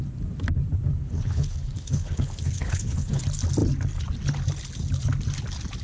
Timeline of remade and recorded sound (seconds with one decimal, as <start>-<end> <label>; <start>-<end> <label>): 0.0-0.9 recorded; 0.9-3.2 remade; 3.2-5.8 recorded